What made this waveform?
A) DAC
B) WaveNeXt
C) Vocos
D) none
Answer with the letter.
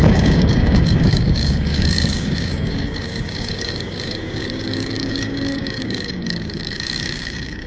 A